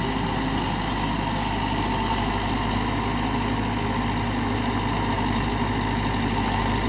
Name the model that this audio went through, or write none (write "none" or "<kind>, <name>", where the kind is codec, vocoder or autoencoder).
none